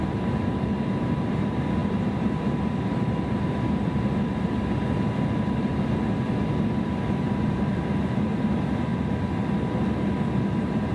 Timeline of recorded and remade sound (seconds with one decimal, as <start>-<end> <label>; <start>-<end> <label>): 0.0-5.7 remade; 5.7-6.8 recorded; 6.8-8.9 remade; 8.9-10.5 recorded; 10.5-10.9 remade